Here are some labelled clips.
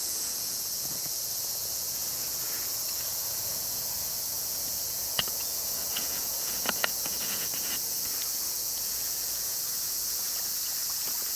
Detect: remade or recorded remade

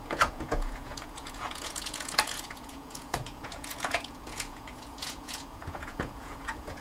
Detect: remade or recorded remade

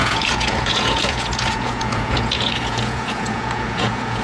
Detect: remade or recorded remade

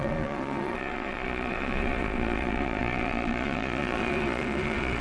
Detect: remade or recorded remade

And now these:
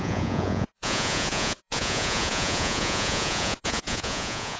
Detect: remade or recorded remade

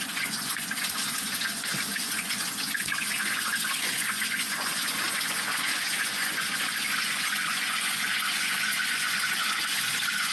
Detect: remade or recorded remade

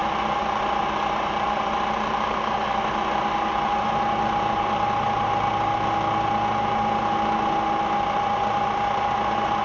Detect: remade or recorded recorded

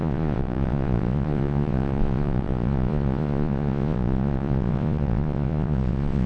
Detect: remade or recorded remade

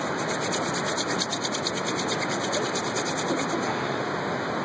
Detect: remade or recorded recorded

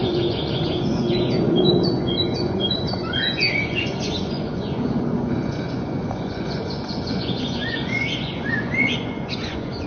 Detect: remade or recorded remade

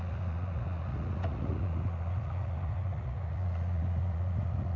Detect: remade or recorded remade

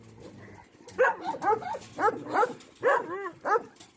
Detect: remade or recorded recorded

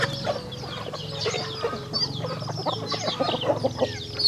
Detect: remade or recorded recorded